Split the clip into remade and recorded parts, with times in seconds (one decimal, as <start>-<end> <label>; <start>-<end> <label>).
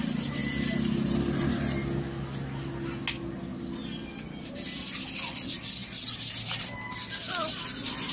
0.0-8.1 recorded